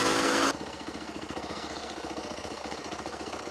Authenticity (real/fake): fake